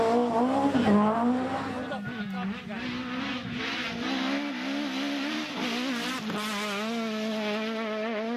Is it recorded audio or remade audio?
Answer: recorded